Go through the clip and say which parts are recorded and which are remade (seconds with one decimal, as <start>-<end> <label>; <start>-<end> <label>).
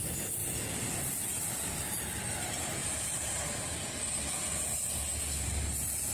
0.0-0.4 recorded; 0.4-1.5 remade; 1.5-2.8 recorded; 2.8-5.0 remade; 5.0-6.1 recorded